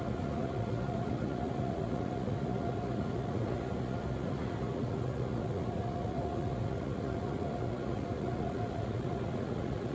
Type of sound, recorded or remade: remade